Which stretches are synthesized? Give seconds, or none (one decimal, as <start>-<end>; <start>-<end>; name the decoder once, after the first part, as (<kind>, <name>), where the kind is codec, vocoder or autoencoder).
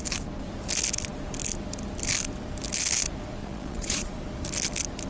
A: 3.4-4.2 (vocoder, Vocos)